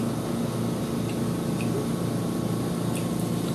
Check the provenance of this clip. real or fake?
real